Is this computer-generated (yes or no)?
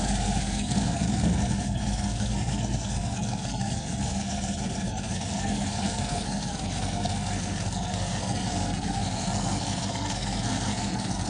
yes